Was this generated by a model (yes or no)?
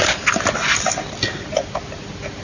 no